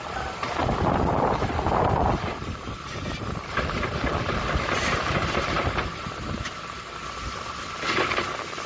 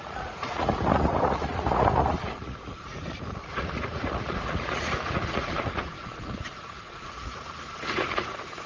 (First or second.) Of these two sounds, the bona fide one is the first